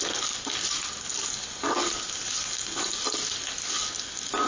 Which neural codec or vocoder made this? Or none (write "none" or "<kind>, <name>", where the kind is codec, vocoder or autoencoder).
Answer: none